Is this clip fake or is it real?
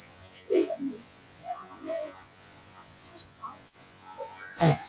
fake